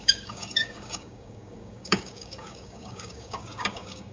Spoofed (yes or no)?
yes